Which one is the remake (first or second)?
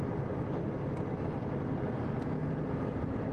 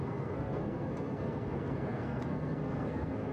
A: second